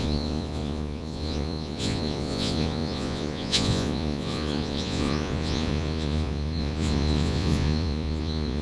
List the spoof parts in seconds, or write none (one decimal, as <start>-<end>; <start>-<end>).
0.0-8.6